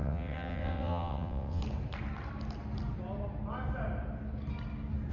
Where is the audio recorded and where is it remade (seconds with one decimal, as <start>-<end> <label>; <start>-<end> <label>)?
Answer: 0.0-1.6 remade; 1.6-5.1 recorded